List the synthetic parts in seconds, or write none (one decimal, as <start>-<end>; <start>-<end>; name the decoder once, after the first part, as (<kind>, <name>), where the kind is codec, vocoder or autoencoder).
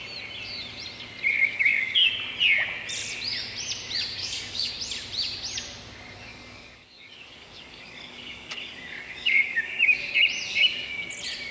1.3-2.1 (codec, DAC); 4.2-4.7; 6.3-10.1; 10.5-11.1